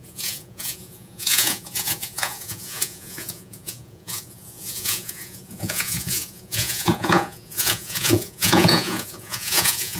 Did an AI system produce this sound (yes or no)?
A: yes